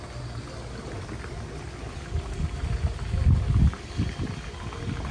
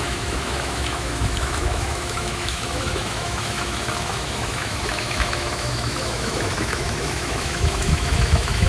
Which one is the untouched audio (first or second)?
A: first